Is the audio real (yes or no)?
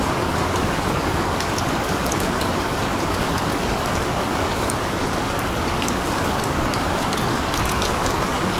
no